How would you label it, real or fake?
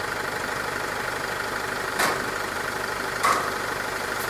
fake